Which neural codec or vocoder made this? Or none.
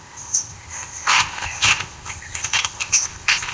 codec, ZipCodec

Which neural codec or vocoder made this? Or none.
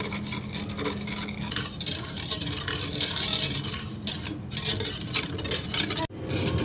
none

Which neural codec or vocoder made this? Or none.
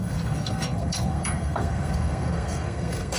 codec, SNAC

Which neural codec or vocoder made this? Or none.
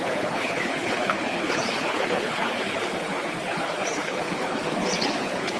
codec, HILCodec